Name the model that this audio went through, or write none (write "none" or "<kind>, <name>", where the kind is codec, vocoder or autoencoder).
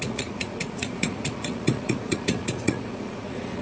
vocoder, Vocos